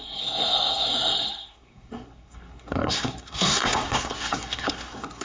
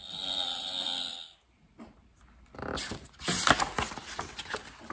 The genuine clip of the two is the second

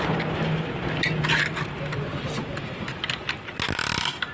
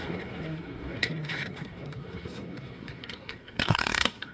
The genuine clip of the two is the first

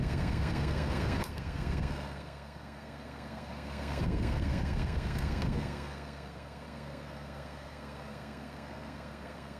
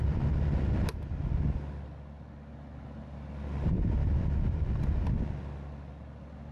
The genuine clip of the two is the second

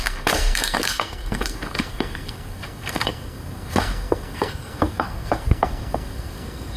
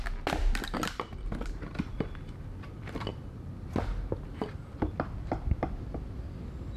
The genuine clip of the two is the second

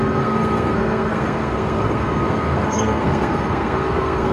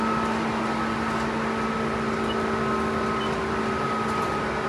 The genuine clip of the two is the second